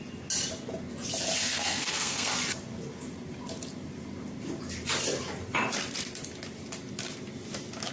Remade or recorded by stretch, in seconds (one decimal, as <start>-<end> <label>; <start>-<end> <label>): 0.0-1.4 recorded; 1.4-2.3 remade; 2.3-7.9 recorded